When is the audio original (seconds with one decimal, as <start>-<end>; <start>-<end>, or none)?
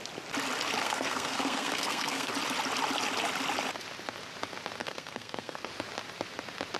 0.0-0.8; 2.3-4.8; 5.7-6.8